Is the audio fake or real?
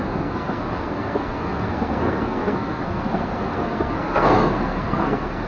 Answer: fake